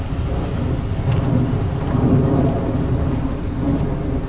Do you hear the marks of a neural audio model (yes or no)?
no